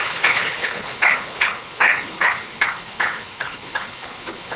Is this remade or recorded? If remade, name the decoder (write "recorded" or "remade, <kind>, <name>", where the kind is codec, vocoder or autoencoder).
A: remade, codec, HILCodec